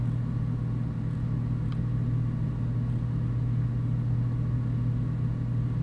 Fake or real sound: real